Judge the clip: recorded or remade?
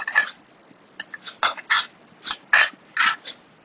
recorded